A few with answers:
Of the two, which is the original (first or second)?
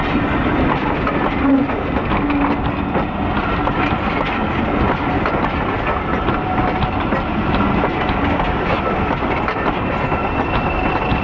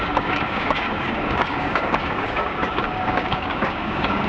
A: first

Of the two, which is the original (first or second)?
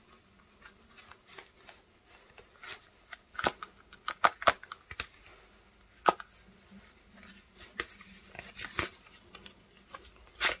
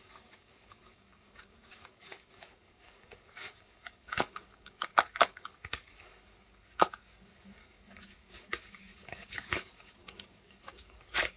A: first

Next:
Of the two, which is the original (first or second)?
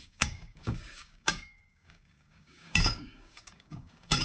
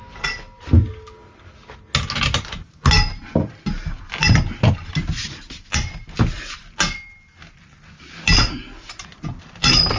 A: second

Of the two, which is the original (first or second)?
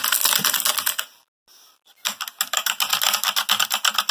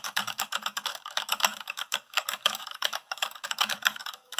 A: first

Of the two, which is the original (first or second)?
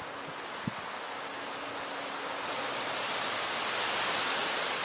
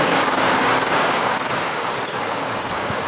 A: first